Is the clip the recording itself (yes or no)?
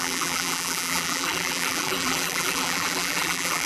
no